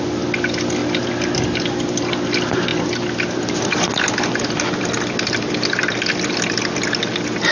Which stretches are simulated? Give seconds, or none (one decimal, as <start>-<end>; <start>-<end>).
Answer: none